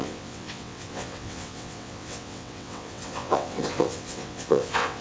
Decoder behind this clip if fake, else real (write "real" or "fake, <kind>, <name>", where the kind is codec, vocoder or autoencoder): fake, vocoder, WaveNeXt